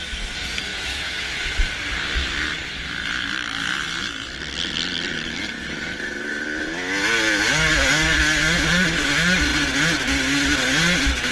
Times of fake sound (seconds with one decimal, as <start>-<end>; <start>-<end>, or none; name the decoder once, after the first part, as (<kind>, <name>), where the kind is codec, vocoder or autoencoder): 0.7-1.4 (autoencoder, DAC-VAE)